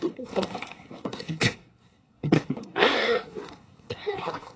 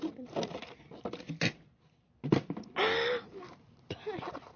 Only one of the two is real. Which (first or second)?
second